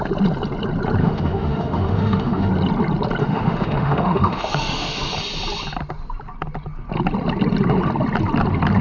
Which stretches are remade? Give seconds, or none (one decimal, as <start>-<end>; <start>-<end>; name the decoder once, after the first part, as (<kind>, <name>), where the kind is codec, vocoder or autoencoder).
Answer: 1.0-2.5 (autoencoder, DAC-VAE); 3.2-5.1